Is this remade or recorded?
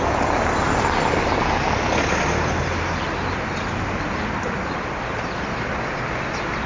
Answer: recorded